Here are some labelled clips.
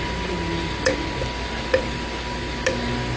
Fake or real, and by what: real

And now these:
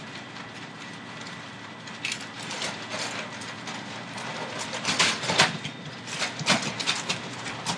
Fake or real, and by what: fake, vocoder, BigVGAN v2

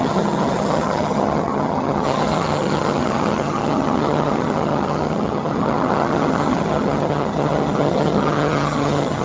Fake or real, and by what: fake, vocoder, HiFi-GAN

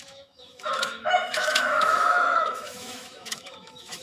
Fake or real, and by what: fake, autoencoder, DAC-VAE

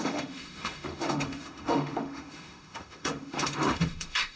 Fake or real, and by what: fake, autoencoder, DAC-VAE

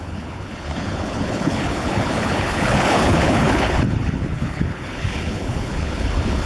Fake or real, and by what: fake, codec, HILCodec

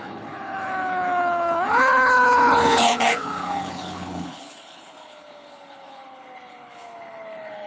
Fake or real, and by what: fake, codec, HILCodec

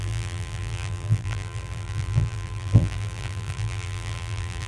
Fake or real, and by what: fake, vocoder, BigVGAN v2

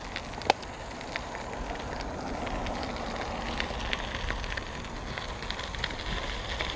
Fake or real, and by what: real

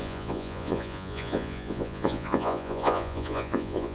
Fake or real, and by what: fake, vocoder, Vocos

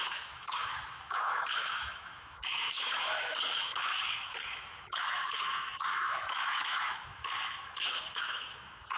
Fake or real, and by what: fake, autoencoder, DAC-VAE